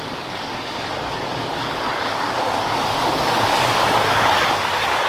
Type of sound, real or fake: fake